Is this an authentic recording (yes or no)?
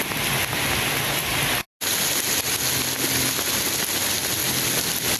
yes